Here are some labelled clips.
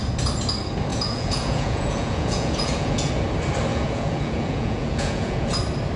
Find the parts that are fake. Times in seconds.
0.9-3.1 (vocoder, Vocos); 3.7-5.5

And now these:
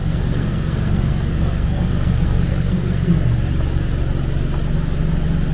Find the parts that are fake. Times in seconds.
0.0-3.1 (codec, SNAC)